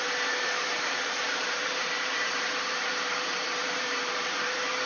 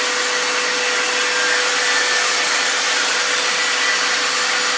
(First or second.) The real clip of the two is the second